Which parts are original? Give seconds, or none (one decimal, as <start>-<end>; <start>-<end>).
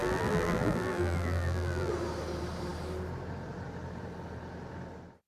1.9-5.3